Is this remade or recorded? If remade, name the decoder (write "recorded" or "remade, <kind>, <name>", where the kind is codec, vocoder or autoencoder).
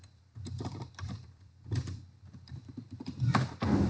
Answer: remade, vocoder, BigVGAN v2